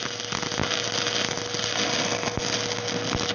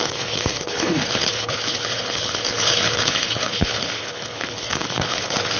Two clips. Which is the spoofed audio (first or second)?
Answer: second